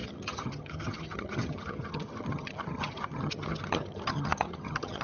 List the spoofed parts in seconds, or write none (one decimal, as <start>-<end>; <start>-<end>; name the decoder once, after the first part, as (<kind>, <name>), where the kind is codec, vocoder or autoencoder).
0.0-5.0 (vocoder, HiFi-GAN)